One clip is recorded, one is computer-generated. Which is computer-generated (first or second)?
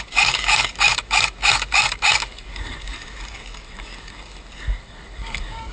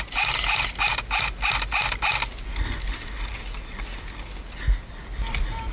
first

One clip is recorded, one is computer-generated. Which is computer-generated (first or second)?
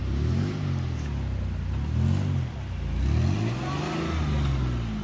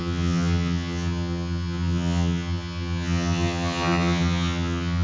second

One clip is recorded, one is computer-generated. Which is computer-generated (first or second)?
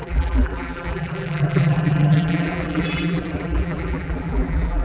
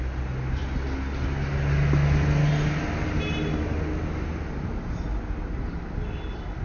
first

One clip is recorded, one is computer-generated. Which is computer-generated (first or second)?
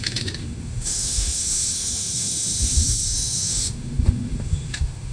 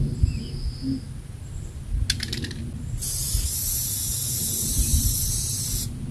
first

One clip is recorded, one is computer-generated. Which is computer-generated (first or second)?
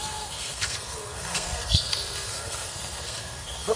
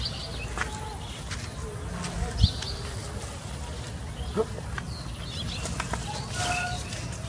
first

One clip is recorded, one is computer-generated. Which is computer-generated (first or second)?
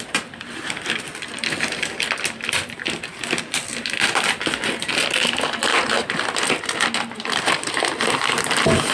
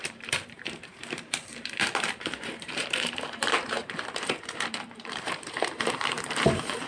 second